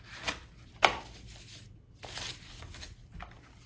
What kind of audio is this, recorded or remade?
recorded